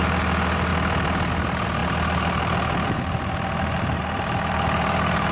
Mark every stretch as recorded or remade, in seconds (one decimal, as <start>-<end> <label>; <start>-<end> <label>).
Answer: 0.0-0.7 remade; 0.7-1.3 recorded; 1.3-5.3 remade